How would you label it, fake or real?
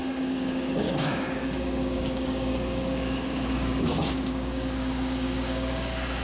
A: fake